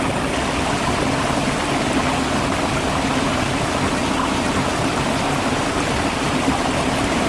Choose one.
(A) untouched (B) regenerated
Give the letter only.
A